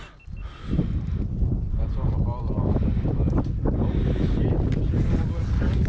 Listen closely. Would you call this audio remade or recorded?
recorded